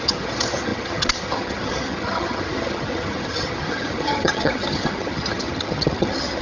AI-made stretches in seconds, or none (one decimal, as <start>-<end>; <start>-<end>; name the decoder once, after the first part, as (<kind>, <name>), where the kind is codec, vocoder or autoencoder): 0.0-6.4 (vocoder, HiFi-GAN)